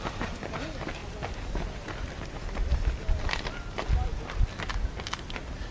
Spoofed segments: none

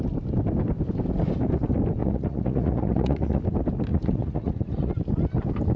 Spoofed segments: 2.0-3.4 (vocoder, Vocos); 3.9-4.9

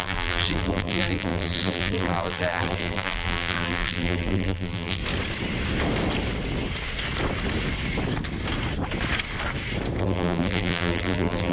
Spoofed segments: 0.0-5.0 (vocoder, BigVGAN v2); 10.0-11.5

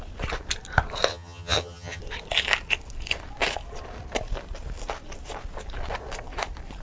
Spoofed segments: 1.1-2.0 (vocoder, HiFi-GAN)

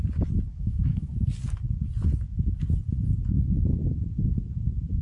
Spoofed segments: 0.5-1.1 (autoencoder, DAC-VAE)

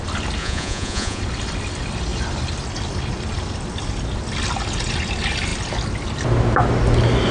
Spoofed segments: 0.4-1.2 (vocoder, Vocos)